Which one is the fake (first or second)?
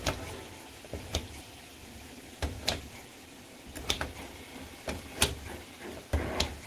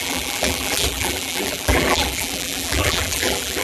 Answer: second